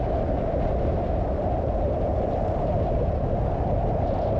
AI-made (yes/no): no